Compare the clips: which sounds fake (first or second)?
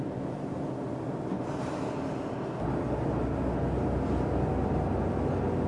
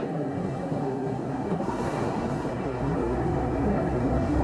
second